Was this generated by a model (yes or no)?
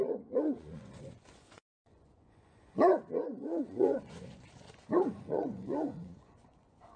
yes